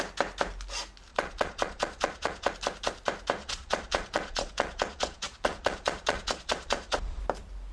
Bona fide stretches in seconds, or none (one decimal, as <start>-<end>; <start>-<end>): 0.0-1.1; 2.5-3.4; 7.2-7.7